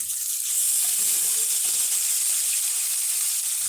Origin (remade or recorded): recorded